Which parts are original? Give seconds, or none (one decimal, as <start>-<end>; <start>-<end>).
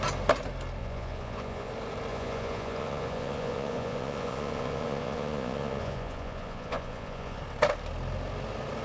0.0-0.8; 1.7-2.1; 7.4-8.8